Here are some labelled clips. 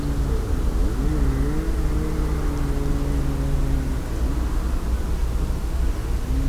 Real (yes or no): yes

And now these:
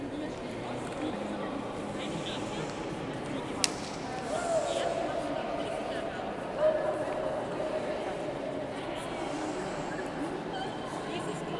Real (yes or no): yes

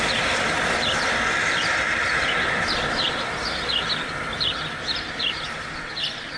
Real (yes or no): no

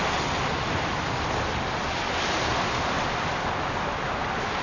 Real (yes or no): yes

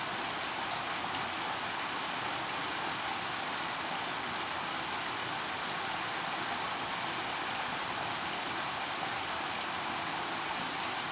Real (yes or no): yes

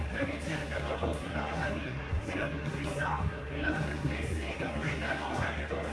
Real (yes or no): no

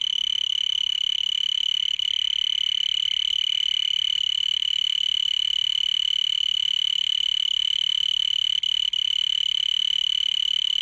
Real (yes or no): yes